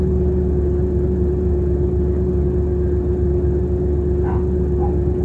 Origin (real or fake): real